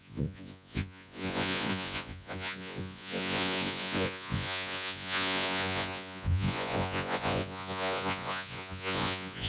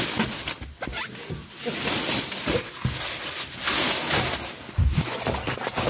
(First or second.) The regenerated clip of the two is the first